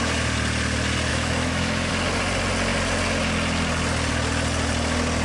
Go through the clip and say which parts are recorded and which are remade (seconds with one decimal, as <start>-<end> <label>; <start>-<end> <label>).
0.0-1.1 recorded; 1.1-1.9 remade; 1.9-5.2 recorded

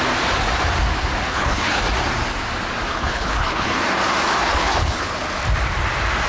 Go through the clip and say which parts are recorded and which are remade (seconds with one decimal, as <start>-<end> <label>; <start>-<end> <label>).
0.0-1.3 recorded; 1.3-1.8 remade; 1.8-2.9 recorded; 2.9-3.8 remade; 3.8-4.4 recorded; 4.4-5.2 remade; 5.2-6.3 recorded

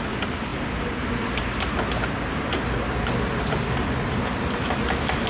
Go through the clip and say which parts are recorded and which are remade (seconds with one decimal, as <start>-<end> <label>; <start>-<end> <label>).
0.0-5.3 recorded

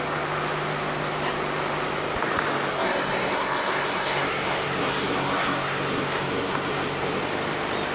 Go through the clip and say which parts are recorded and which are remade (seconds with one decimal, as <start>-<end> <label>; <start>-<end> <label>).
0.0-2.7 recorded; 2.7-7.2 remade; 7.2-7.9 recorded

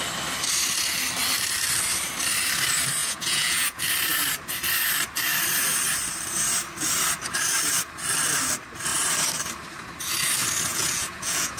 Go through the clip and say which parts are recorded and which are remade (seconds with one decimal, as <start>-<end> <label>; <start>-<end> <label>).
0.0-3.0 recorded; 3.0-3.8 remade; 3.8-10.7 recorded; 10.7-11.6 remade

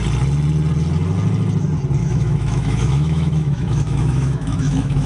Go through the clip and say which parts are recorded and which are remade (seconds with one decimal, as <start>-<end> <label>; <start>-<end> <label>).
0.0-2.0 recorded; 2.0-5.1 remade

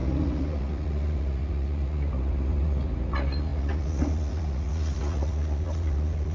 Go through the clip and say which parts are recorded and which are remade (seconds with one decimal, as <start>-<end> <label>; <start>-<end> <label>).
0.0-6.3 remade

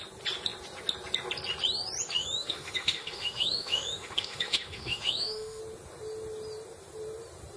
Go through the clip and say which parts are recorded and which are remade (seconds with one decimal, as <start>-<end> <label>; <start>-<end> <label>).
0.0-2.2 recorded; 2.2-5.6 remade; 5.6-7.6 recorded